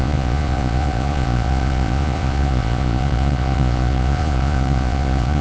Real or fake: fake